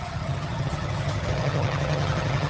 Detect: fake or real fake